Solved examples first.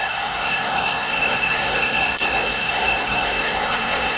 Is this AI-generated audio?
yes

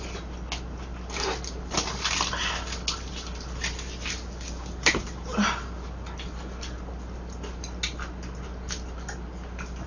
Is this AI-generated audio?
no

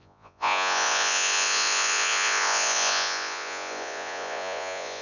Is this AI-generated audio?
yes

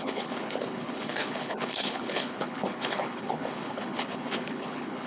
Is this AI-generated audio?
yes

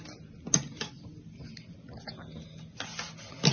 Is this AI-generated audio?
no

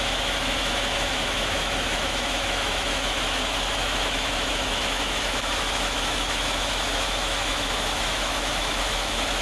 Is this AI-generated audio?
yes